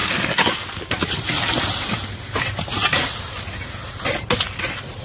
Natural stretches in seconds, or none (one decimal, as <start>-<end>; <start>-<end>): 0.0-5.0